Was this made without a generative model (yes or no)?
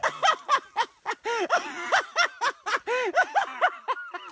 yes